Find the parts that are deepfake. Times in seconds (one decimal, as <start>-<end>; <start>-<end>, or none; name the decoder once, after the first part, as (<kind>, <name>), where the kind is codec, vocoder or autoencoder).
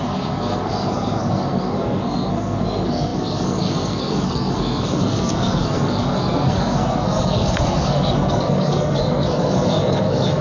0.0-10.4 (codec, SNAC)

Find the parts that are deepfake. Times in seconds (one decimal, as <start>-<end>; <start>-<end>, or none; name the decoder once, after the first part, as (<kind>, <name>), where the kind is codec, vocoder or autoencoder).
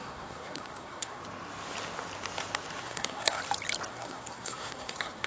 0.0-1.2 (codec, SNAC); 2.8-3.4; 3.9-5.3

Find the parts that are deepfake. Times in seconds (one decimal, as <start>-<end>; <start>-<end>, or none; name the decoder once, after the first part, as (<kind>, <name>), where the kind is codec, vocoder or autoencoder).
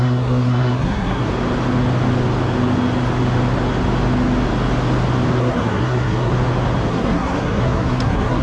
0.0-1.3 (codec, SNAC); 5.4-6.3; 6.9-8.4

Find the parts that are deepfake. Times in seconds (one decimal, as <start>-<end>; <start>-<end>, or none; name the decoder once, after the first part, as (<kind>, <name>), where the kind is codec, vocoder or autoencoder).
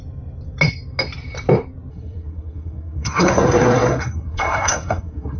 1.9-5.4 (codec, SNAC)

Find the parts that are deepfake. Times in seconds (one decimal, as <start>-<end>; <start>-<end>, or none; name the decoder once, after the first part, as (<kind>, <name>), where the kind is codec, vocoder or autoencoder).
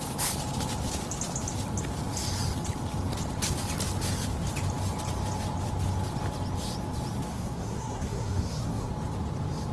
7.3-8.9 (codec, SNAC)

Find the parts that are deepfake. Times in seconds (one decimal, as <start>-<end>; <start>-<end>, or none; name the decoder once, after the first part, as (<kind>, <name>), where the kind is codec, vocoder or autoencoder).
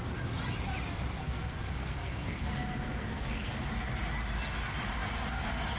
1.2-3.5 (codec, SNAC)